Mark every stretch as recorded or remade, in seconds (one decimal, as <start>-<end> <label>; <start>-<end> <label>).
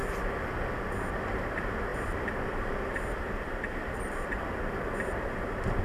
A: 0.0-0.9 recorded; 0.9-5.8 remade